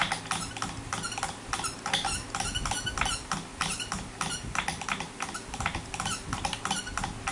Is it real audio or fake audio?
real